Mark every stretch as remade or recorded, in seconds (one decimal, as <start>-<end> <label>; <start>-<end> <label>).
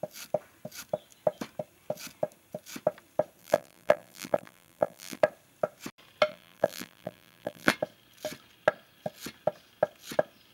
0.0-3.4 recorded; 3.4-5.2 remade; 5.2-6.3 recorded; 6.3-7.7 remade; 7.7-10.5 recorded